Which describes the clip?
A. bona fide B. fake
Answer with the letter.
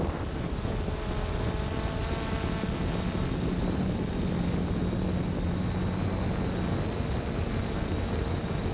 A